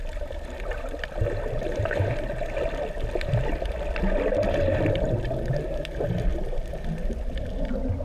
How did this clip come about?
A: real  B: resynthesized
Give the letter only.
A